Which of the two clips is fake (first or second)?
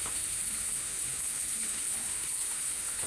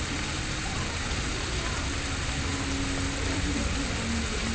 first